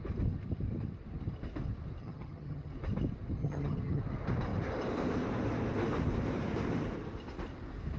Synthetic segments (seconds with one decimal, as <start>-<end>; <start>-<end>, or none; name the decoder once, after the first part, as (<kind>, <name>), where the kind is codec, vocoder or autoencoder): 2.0-2.7 (vocoder, HiFi-GAN); 3.4-4.0